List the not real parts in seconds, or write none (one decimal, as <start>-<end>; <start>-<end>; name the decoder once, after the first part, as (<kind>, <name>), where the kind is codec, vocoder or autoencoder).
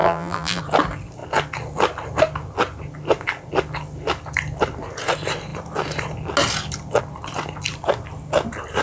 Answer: 0.0-0.6 (vocoder, BigVGAN v2)